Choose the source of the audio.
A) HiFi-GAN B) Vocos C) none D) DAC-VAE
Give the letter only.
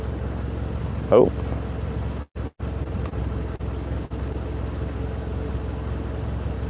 C